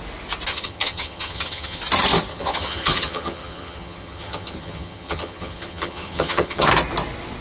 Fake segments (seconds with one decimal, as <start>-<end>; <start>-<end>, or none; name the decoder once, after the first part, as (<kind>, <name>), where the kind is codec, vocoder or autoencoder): 0.5-1.8 (vocoder, HiFi-GAN); 2.3-6.7